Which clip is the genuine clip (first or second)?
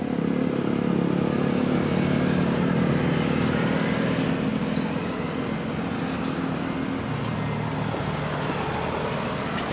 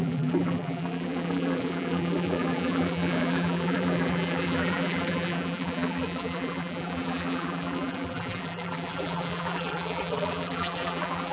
first